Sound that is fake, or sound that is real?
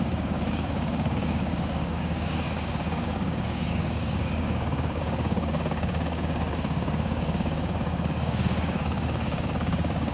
fake